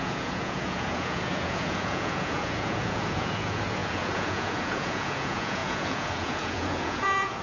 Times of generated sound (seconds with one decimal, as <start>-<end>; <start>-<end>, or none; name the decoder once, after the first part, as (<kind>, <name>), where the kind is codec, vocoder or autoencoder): 0.0-7.4 (vocoder, Vocos)